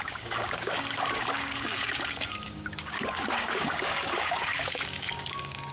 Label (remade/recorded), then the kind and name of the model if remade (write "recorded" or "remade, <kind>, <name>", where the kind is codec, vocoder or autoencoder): remade, codec, DAC